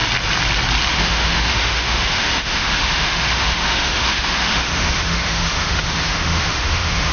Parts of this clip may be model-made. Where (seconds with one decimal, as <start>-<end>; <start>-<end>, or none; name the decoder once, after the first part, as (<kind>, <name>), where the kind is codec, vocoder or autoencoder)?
0.9-7.1 (autoencoder, DAC-VAE)